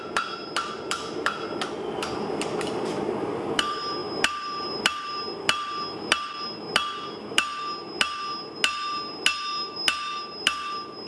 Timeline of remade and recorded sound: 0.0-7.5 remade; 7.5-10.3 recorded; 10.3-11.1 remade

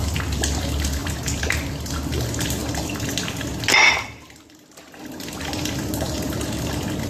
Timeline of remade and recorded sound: 0.0-1.0 recorded; 1.0-1.7 remade; 1.7-7.1 recorded

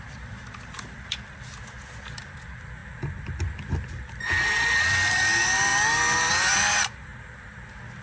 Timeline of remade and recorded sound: 0.0-2.8 remade; 2.8-4.4 recorded; 4.4-5.7 remade; 5.7-6.3 recorded; 6.3-7.1 remade; 7.1-8.0 recorded

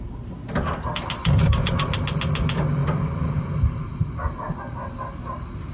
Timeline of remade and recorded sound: 0.0-1.2 recorded; 1.2-1.7 remade; 1.7-5.7 recorded

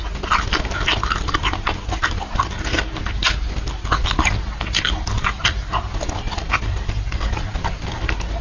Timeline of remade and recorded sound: 0.0-4.0 recorded; 4.0-8.0 remade; 8.0-8.4 recorded

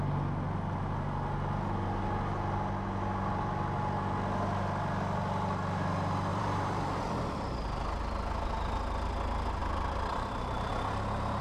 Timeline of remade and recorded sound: 0.0-6.3 recorded; 6.3-7.0 remade; 7.0-9.6 recorded; 9.6-10.7 remade; 10.7-11.4 recorded

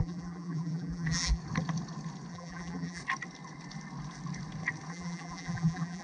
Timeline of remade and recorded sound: 0.0-1.4 remade; 1.4-2.3 recorded; 2.3-3.0 remade; 3.0-4.9 recorded; 4.9-6.0 remade